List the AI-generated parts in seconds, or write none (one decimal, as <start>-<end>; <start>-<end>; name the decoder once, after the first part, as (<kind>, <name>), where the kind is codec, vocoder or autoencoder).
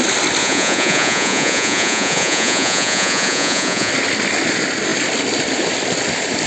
0.4-3.9 (vocoder, Vocos)